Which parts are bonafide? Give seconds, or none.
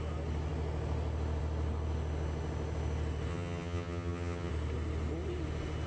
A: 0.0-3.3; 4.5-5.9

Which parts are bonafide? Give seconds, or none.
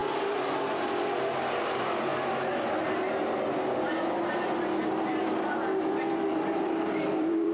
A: 2.1-5.2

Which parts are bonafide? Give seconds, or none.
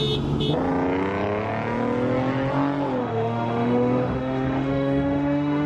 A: 0.0-3.0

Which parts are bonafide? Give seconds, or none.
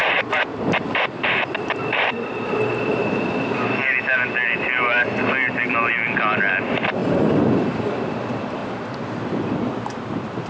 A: 8.6-9.3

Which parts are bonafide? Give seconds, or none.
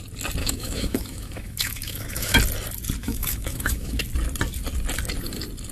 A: 0.0-0.4; 2.4-3.0; 4.0-5.7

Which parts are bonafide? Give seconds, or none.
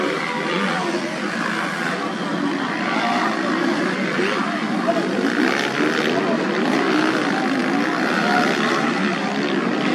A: 0.0-9.9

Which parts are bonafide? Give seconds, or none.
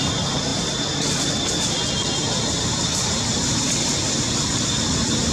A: none